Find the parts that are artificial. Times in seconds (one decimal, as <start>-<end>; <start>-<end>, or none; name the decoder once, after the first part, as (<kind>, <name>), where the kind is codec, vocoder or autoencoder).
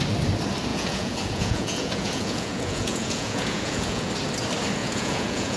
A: 0.7-4.1 (vocoder, Vocos); 4.8-5.6